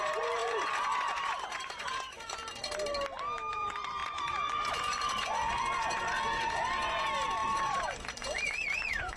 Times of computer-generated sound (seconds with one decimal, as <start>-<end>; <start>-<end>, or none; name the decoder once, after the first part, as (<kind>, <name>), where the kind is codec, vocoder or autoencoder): 0.0-2.4 (vocoder, Vocos); 3.5-9.2